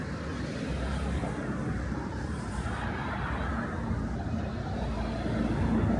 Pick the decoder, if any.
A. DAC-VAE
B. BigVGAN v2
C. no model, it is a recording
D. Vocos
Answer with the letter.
C